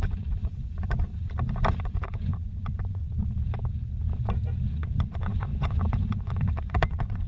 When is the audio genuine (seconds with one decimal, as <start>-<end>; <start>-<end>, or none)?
1.1-1.8; 3.0-4.7